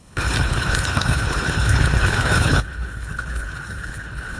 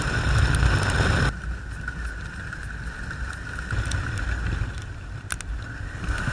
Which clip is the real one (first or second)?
second